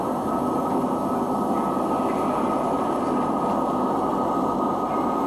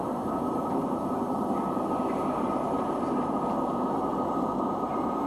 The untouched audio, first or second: first